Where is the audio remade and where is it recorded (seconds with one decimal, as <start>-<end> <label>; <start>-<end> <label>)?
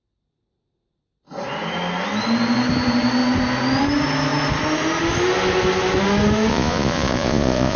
0.0-6.5 recorded; 6.5-7.8 remade